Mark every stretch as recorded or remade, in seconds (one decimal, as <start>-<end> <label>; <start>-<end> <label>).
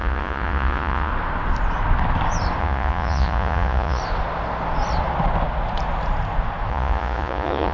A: 0.0-1.1 remade; 1.1-2.6 recorded; 2.6-4.0 remade; 4.0-6.7 recorded; 6.7-7.7 remade